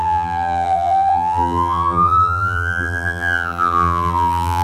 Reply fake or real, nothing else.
fake